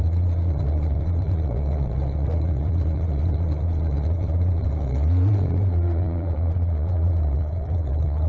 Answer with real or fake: fake